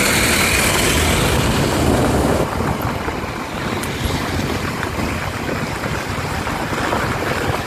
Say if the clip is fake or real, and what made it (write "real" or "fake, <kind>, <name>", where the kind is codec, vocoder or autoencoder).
real